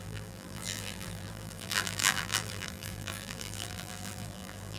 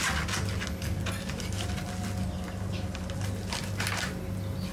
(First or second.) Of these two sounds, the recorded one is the second